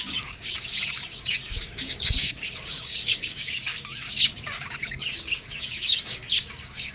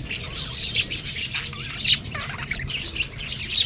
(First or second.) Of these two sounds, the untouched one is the second